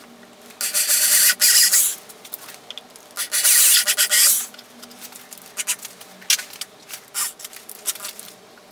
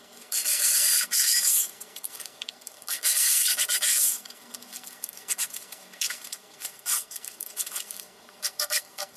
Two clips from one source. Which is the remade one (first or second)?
second